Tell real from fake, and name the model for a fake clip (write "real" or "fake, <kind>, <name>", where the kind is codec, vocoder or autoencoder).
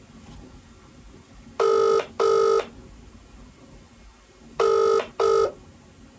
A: real